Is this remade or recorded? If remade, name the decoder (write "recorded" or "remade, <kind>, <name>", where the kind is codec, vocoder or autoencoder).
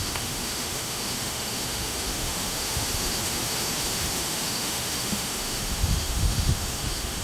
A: remade, autoencoder, DAC-VAE